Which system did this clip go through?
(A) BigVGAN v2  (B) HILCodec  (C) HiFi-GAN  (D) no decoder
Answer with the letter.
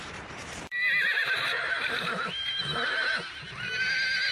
A